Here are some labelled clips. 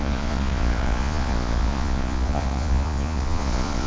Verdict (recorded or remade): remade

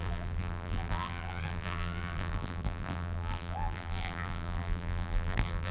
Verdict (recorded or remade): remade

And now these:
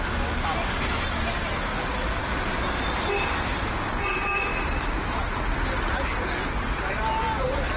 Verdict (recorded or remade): recorded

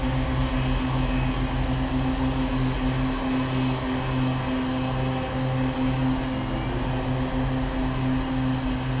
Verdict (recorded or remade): recorded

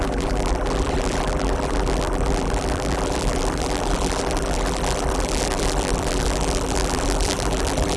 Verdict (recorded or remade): remade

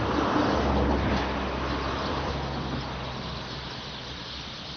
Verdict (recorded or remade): recorded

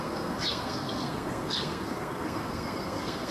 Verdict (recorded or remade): remade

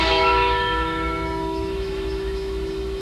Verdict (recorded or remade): remade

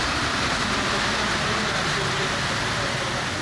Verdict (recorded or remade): recorded